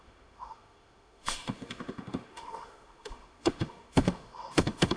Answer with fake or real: fake